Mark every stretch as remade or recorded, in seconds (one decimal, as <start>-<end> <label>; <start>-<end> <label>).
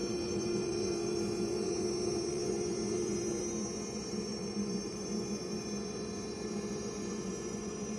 0.0-8.0 remade